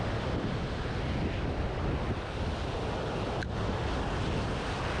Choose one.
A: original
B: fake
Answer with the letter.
A